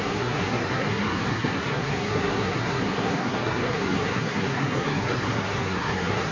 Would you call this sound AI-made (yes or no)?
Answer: yes